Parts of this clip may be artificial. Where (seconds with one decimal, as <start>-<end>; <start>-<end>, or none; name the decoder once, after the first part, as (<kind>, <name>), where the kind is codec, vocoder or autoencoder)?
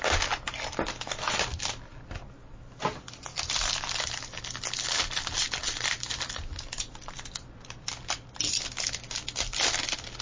1.9-2.8 (vocoder, BigVGAN v2); 3.3-4.0; 5.6-8.6